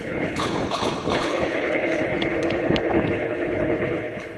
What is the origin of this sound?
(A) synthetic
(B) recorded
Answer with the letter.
A